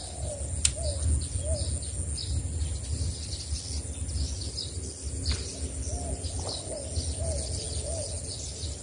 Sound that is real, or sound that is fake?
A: real